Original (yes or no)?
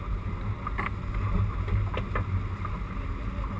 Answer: yes